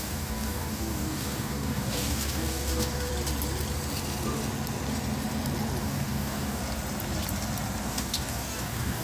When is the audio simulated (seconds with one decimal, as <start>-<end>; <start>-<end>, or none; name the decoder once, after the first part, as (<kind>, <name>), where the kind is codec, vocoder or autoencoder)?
0.0-3.1 (codec, DAC); 5.8-6.6; 7.8-9.0